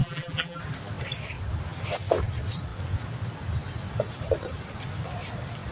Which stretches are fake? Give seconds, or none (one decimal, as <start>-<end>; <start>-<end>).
0.0-0.6